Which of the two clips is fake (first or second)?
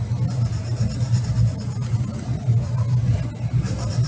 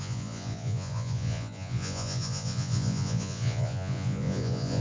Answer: second